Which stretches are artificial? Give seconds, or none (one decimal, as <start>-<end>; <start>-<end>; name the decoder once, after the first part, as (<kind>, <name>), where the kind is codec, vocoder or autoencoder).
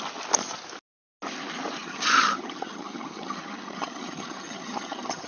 1.8-5.3 (vocoder, HiFi-GAN)